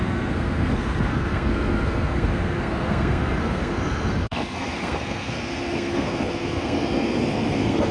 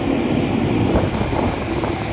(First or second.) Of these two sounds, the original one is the second